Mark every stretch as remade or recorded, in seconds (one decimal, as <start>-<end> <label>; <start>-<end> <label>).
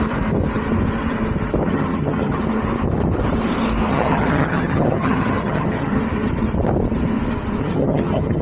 0.0-1.6 recorded; 1.6-2.4 remade; 2.4-3.9 recorded; 3.9-6.0 remade; 6.0-7.6 recorded; 7.6-8.4 remade